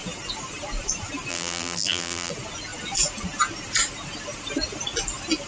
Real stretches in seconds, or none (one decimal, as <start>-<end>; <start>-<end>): 0.0-1.3; 2.3-5.5

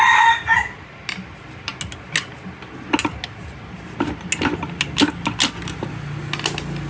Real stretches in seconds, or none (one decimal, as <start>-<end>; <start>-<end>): 0.0-6.9

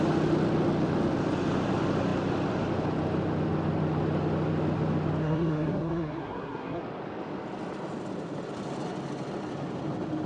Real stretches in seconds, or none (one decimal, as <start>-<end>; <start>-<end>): 0.0-5.2; 6.8-10.3

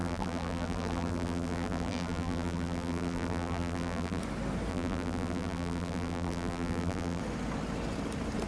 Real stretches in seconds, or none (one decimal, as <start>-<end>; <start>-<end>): 4.2-4.7; 7.2-8.5

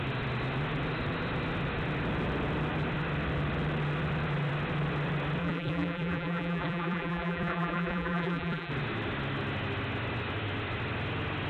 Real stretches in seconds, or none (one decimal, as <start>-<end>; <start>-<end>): 0.0-5.4; 8.7-11.5

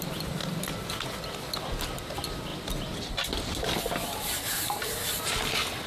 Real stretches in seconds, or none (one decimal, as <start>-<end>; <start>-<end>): 0.0-5.9

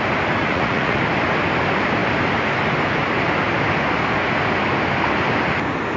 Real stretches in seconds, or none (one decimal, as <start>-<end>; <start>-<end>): 0.0-0.4; 1.0-6.0

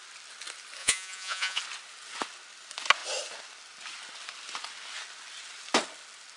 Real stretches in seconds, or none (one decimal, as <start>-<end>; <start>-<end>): 0.0-0.8; 1.6-6.4